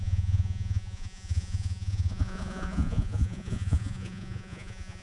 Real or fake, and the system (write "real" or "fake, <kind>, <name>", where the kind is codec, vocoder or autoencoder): fake, vocoder, Vocos